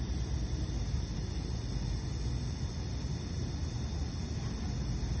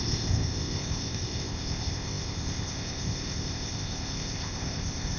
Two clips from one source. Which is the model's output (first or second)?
second